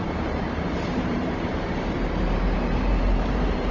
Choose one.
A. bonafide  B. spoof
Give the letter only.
B